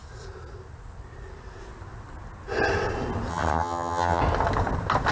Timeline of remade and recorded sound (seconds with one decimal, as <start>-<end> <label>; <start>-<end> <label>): 0.0-3.3 recorded; 3.3-4.2 remade; 4.2-5.1 recorded